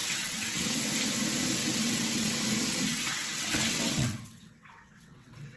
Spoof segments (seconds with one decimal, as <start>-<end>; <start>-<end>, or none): 0.0-0.8; 1.6-2.4; 2.9-5.6